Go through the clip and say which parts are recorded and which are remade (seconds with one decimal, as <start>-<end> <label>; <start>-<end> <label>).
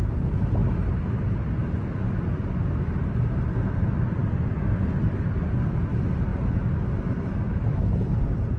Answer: 0.0-8.6 recorded